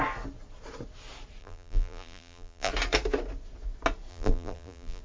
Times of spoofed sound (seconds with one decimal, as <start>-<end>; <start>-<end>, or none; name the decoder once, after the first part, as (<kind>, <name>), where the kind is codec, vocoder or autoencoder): 1.4-2.7 (vocoder, BigVGAN v2); 4.1-5.0